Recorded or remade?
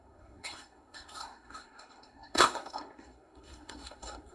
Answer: remade